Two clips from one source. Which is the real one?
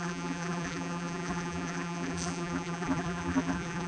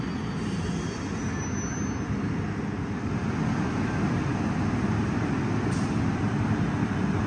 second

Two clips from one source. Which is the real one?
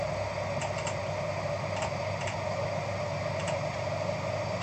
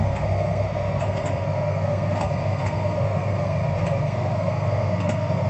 first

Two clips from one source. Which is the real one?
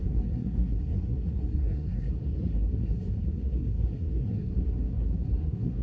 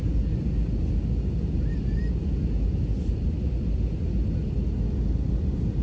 second